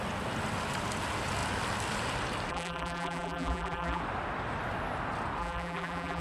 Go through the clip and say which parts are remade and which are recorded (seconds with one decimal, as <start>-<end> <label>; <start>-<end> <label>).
0.0-2.5 recorded; 2.5-4.0 remade; 4.0-5.4 recorded; 5.4-6.2 remade